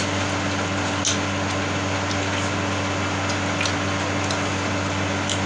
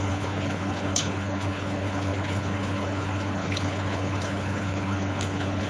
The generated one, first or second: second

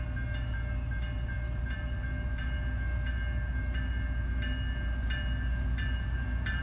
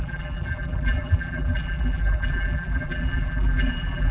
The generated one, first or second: second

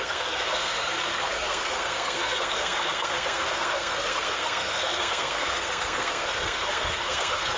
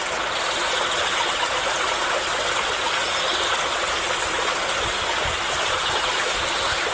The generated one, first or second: first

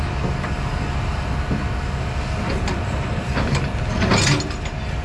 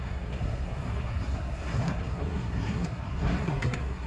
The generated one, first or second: second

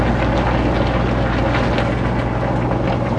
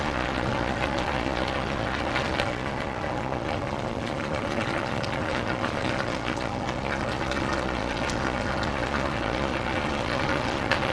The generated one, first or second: second